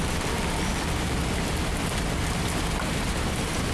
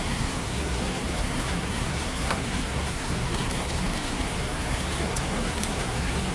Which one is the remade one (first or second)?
second